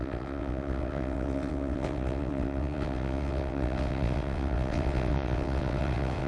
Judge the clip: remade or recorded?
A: remade